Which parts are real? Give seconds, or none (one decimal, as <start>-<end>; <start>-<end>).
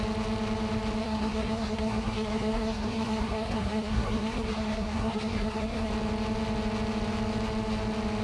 0.0-1.0; 5.9-8.2